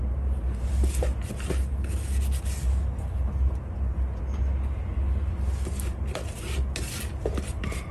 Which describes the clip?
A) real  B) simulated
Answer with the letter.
A